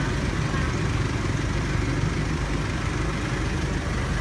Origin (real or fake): real